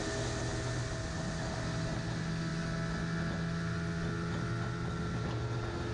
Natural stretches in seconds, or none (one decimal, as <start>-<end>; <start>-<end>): 0.0-5.9

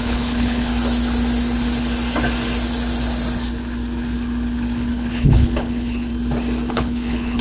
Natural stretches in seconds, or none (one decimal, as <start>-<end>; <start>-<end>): 0.7-4.9; 6.1-6.7

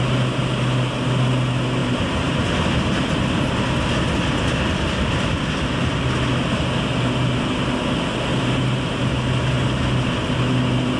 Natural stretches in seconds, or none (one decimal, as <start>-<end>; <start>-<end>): 0.0-1.8; 2.4-8.3; 9.1-11.0

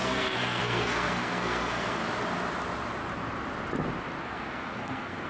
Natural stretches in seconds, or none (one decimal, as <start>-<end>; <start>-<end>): 2.0-4.2

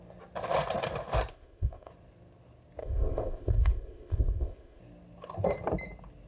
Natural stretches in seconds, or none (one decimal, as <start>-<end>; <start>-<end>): 0.0-1.3; 1.9-2.8; 4.8-6.3